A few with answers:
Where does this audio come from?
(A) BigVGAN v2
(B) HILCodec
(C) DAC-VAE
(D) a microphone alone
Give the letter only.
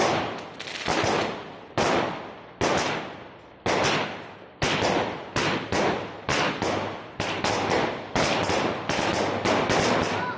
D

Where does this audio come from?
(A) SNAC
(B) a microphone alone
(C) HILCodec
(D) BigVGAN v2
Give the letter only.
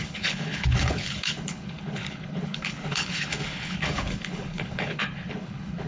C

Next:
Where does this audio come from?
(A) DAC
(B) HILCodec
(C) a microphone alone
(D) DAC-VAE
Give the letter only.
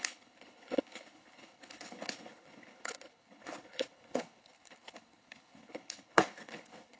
B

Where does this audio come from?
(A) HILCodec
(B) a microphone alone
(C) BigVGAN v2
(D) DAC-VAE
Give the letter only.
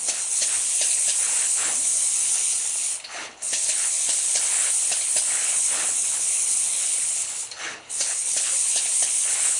A